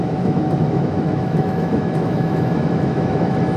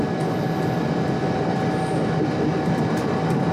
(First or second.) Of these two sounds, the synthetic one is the first